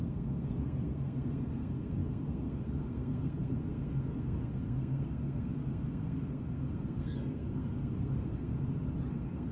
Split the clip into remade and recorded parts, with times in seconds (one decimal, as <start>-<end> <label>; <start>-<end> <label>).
0.0-8.5 remade; 8.5-9.1 recorded; 9.1-9.5 remade